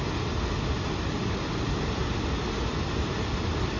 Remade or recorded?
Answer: recorded